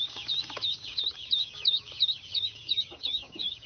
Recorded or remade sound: remade